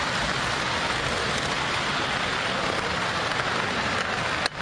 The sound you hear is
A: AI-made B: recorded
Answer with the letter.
B